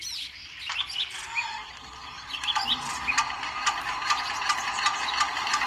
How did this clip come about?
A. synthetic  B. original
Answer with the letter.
B